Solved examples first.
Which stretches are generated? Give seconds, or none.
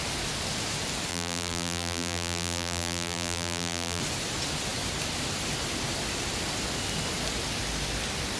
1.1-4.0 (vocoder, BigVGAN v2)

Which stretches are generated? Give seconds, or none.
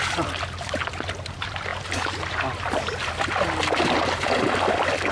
none